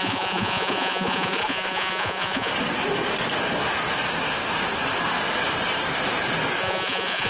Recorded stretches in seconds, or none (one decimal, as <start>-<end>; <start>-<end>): 2.5-6.6